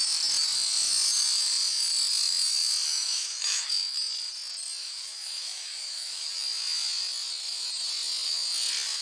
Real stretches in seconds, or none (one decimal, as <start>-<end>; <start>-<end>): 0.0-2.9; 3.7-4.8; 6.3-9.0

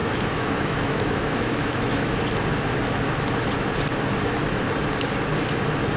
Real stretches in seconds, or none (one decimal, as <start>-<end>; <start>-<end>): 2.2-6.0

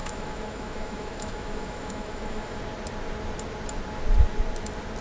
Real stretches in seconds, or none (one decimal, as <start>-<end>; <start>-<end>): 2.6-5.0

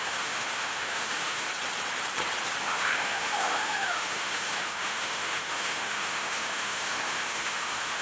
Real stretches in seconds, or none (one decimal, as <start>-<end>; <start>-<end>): 1.5-2.6